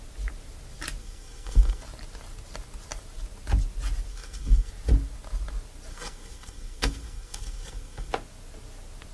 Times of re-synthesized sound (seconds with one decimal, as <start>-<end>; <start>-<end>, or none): 1.0-1.8; 4.1-4.7; 5.9-8.1